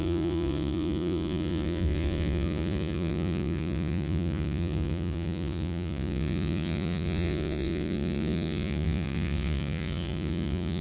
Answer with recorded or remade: remade